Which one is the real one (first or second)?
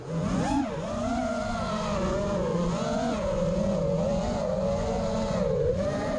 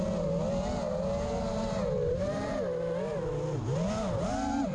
second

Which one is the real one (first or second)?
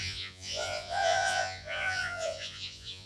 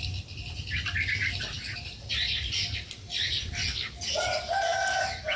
second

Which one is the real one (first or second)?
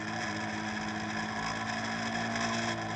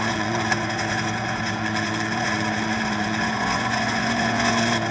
first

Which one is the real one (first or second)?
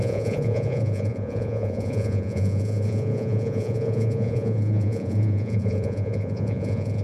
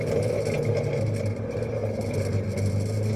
second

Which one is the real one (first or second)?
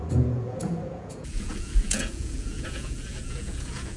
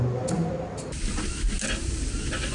second